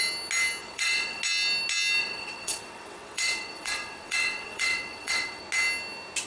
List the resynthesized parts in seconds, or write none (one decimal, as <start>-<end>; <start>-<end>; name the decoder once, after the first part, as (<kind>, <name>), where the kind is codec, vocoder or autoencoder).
0.6-1.2 (vocoder, WaveNeXt); 2.0-5.4

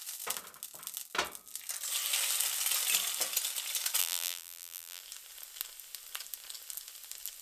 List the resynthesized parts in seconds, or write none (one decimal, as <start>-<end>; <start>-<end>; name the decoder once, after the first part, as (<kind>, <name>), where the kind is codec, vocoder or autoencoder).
4.0-5.0 (vocoder, BigVGAN v2)

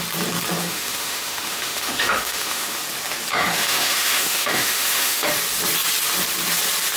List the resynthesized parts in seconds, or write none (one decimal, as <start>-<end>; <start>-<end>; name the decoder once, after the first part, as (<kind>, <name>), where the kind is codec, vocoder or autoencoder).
0.6-2.8 (autoencoder, DAC-VAE); 3.3-5.3

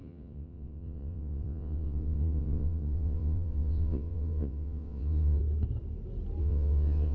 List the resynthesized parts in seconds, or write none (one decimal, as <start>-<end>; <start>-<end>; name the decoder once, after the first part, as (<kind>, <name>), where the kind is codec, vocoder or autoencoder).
0.0-5.4 (vocoder, WaveNeXt); 6.4-7.1